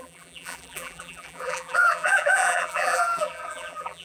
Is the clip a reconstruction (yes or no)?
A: yes